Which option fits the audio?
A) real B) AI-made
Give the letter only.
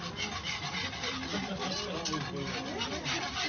A